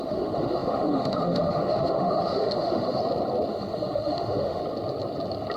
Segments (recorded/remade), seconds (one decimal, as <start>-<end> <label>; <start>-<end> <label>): 0.0-3.0 remade; 3.0-3.5 recorded; 3.5-4.6 remade; 4.6-5.6 recorded